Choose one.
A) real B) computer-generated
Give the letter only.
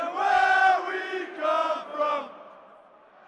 A